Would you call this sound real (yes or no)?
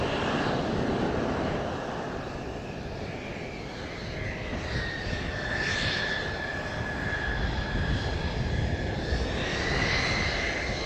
yes